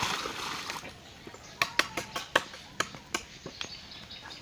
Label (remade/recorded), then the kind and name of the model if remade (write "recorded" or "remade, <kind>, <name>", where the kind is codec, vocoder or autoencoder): recorded